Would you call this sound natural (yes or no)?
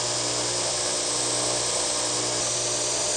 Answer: yes